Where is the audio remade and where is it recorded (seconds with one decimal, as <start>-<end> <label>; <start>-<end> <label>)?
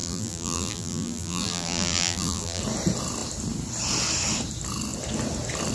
0.0-2.6 remade; 2.6-5.7 recorded